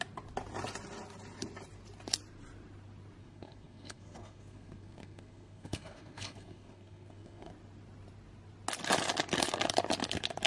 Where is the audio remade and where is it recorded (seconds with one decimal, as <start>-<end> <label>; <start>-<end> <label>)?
0.0-3.2 recorded; 3.2-7.5 remade; 7.5-10.5 recorded